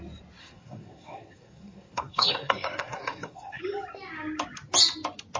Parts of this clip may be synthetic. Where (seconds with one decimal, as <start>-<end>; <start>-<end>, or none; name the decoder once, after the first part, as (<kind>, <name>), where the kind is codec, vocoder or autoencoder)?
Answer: 0.4-3.6 (codec, SNAC)